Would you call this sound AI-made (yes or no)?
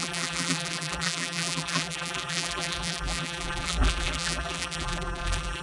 yes